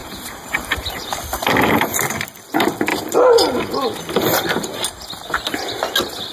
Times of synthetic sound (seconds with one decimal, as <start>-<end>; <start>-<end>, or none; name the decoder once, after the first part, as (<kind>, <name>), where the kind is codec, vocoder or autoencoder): 0.0-1.2 (vocoder, BigVGAN v2)